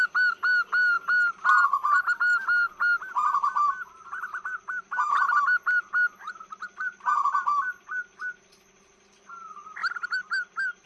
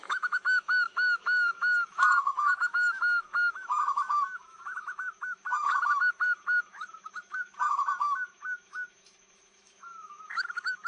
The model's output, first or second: second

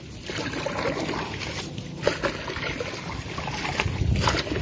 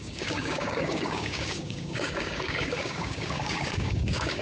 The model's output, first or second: second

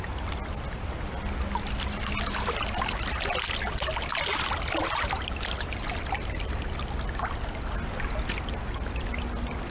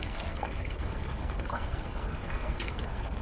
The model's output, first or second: second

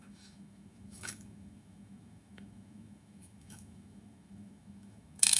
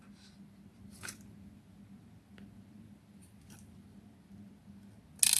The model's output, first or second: first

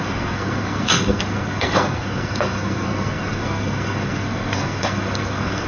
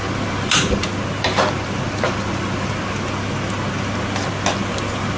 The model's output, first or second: first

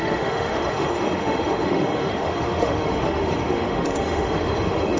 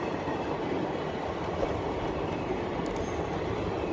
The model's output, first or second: first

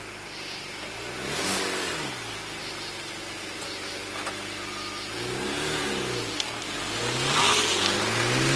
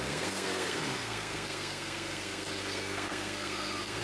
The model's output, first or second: second